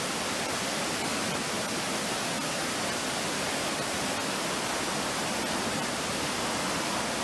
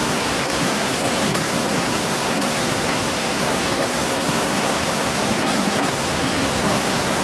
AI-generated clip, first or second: second